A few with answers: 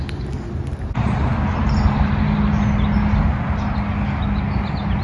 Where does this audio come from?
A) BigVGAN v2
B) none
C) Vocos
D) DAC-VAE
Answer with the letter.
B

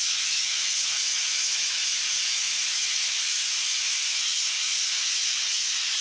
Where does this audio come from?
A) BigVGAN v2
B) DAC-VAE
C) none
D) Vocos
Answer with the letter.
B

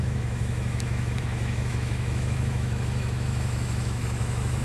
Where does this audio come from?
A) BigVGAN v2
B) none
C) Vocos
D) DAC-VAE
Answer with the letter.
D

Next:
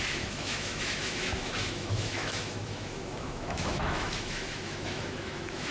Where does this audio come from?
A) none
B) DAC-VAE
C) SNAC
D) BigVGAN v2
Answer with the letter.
B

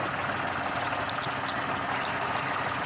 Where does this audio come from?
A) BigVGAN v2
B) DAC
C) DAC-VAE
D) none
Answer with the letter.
D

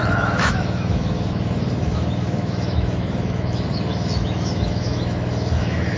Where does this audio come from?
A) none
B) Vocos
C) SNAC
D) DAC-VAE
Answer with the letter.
D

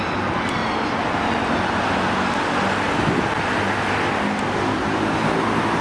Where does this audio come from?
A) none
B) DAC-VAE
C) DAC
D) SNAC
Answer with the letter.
A